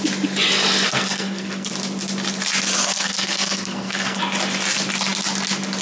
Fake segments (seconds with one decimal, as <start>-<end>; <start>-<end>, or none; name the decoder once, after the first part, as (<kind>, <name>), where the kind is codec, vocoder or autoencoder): 0.9-1.7 (codec, SNAC); 2.8-4.2